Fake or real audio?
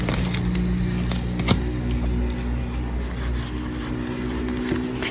real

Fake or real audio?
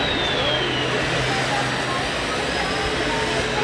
real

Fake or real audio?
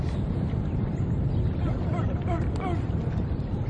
real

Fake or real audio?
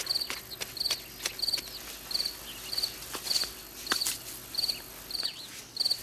real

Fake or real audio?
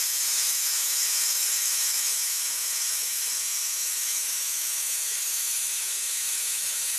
fake